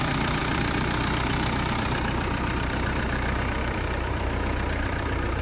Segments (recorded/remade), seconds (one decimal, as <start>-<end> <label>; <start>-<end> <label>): 0.0-5.4 remade